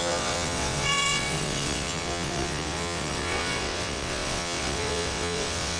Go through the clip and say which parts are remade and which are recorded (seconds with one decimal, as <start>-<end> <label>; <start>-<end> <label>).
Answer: 0.0-5.8 remade